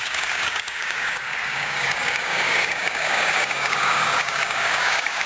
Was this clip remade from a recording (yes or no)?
yes